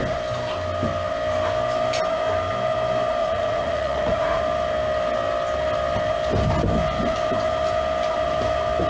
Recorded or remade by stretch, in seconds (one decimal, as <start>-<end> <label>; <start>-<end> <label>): 0.0-3.2 recorded; 3.2-4.4 remade; 4.4-8.9 recorded